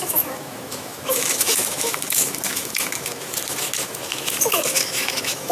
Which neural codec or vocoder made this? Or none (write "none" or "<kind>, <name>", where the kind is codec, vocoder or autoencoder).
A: autoencoder, DAC-VAE